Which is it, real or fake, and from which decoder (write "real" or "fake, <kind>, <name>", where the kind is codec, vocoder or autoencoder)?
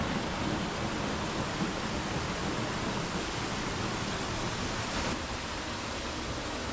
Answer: real